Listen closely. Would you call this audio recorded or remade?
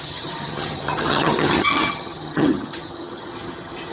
remade